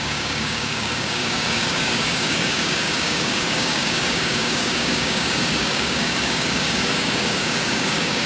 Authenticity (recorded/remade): remade